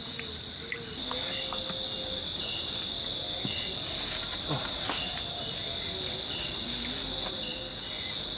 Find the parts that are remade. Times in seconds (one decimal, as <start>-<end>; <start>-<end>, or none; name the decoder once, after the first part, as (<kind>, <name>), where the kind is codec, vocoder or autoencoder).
none